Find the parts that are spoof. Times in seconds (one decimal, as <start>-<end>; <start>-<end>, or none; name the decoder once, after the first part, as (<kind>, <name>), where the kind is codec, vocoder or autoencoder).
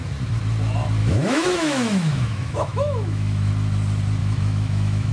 1.0-3.5 (autoencoder, DAC-VAE); 4.2-5.1